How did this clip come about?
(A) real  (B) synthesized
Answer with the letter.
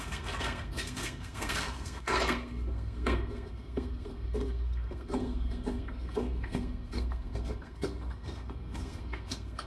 B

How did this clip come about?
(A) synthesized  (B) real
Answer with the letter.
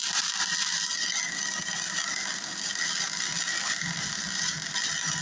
B